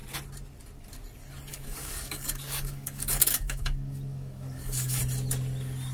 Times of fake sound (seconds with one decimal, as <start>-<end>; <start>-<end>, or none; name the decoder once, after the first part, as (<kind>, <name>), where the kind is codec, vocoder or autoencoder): 1.5-5.0 (codec, DAC)